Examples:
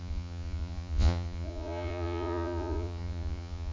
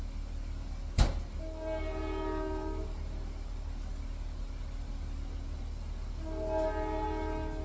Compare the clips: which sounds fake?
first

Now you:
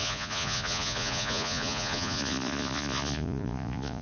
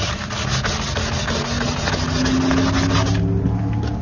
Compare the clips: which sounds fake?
first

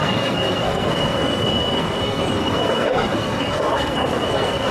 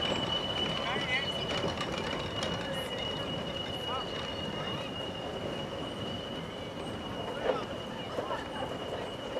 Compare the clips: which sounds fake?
first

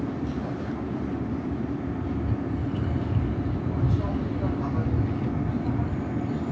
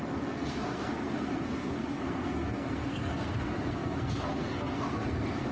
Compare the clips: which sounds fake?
second